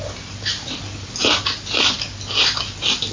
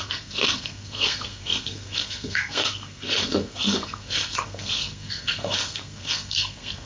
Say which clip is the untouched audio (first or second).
first